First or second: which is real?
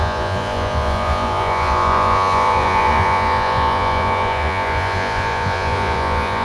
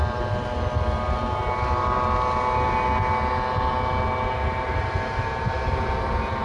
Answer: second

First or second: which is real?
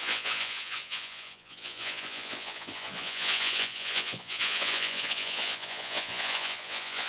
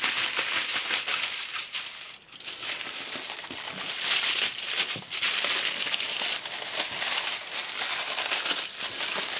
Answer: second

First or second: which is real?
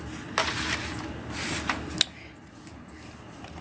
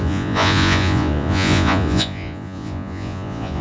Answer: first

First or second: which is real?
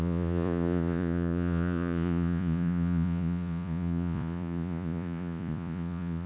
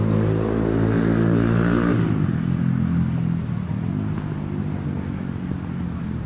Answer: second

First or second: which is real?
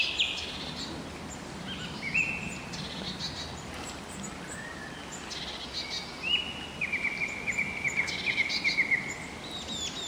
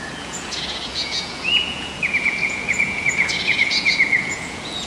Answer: first